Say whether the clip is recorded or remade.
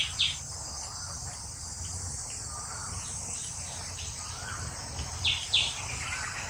recorded